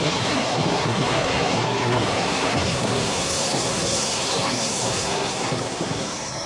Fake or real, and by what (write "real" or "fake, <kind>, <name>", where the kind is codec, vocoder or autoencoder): fake, codec, SNAC